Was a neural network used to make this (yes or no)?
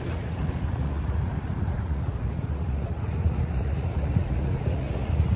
yes